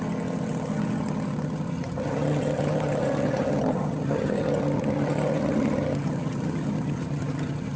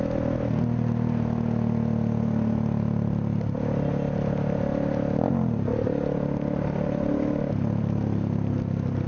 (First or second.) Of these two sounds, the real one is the second